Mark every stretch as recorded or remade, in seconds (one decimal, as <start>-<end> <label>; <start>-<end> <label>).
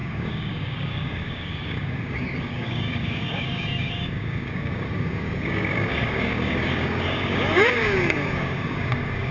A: 0.0-9.3 remade